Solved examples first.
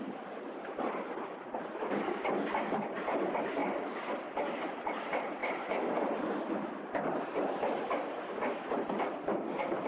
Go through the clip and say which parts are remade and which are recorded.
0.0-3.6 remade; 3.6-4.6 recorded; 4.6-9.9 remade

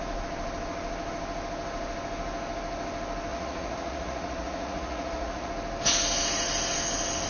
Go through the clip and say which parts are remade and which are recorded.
0.0-3.3 recorded; 3.3-5.5 remade; 5.5-7.3 recorded